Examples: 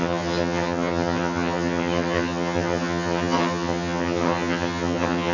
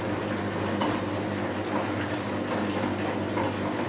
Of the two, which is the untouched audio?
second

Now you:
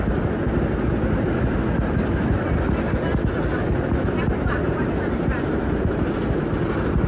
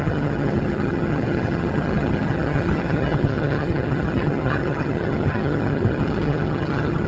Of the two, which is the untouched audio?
first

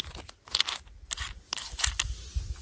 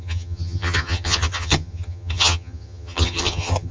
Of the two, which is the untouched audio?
first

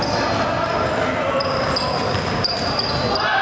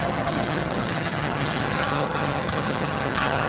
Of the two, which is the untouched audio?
first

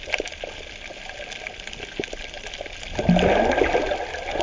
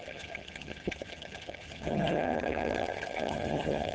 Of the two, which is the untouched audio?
first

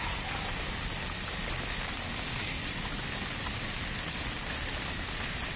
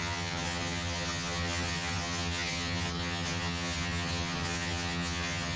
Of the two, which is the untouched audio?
first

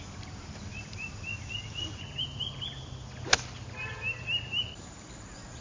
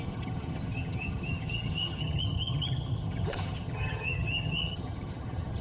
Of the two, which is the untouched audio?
first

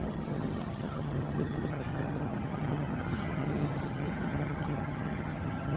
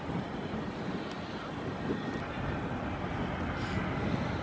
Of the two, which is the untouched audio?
second